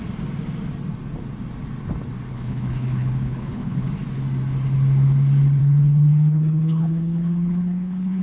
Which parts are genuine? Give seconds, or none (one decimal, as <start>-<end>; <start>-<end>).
0.0-2.3; 3.9-5.6